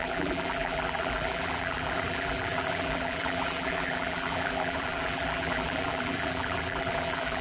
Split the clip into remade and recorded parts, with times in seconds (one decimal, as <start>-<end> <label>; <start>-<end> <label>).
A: 0.0-7.4 remade